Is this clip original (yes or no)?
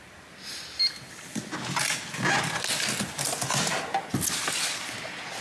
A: yes